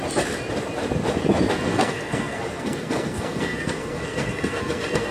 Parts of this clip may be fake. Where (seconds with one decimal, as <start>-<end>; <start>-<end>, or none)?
1.7-5.1